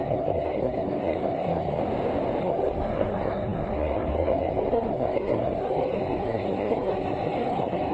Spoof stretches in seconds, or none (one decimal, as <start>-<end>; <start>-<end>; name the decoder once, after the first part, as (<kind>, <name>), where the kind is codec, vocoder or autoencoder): 0.0-1.8 (codec, SNAC); 2.4-7.9

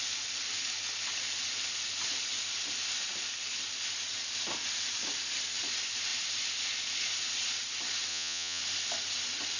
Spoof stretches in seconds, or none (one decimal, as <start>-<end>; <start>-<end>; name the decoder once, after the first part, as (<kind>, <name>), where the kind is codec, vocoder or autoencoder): 8.1-8.6 (vocoder, Vocos)

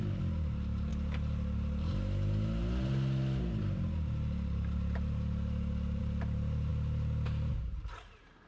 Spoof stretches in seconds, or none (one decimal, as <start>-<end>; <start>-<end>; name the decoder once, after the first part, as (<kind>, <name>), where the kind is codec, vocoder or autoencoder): none

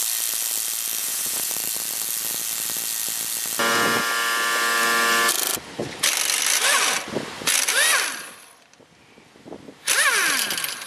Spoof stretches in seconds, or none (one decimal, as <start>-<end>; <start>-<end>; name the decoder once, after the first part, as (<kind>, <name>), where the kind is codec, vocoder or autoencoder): 1.0-1.5 (vocoder, Vocos)